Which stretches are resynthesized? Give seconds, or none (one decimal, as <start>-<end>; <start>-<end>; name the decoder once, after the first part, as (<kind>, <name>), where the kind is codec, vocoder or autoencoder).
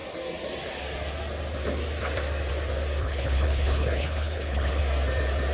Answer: 3.0-4.8 (codec, HILCodec)